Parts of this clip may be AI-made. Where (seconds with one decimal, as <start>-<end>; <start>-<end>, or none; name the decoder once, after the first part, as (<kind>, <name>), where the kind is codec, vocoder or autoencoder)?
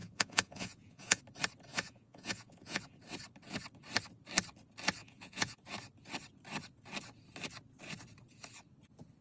0.0-1.2 (vocoder, Vocos); 1.7-2.8; 5.0-5.6